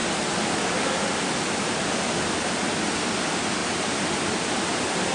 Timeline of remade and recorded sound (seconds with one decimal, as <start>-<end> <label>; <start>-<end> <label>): 0.0-5.1 recorded